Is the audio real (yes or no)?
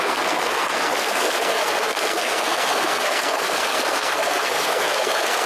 no